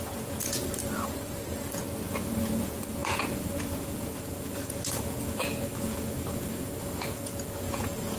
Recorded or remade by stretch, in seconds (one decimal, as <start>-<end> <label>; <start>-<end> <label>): 0.0-0.6 remade; 0.6-2.1 recorded; 2.1-6.1 remade; 6.1-7.0 recorded; 7.0-8.2 remade